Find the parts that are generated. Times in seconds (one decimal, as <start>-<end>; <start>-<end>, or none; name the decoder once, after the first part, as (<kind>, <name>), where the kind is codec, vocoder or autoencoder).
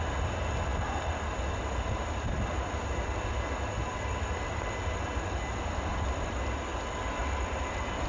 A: none